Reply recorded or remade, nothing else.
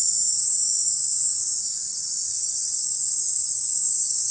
remade